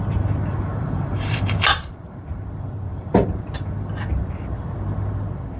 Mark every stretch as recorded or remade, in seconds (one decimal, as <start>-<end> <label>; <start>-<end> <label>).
0.0-0.7 recorded; 0.7-2.4 remade; 2.4-2.9 recorded; 2.9-3.4 remade; 3.4-5.6 recorded